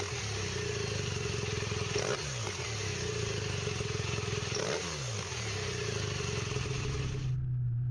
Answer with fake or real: real